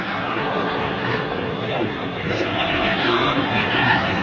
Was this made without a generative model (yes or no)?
no